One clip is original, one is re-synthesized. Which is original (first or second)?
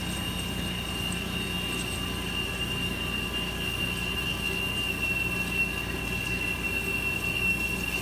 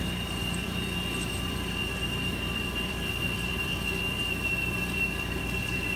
first